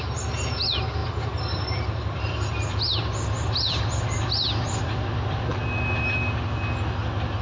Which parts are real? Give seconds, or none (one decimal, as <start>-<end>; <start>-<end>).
0.0-1.0; 5.4-7.4